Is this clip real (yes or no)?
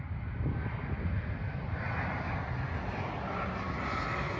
yes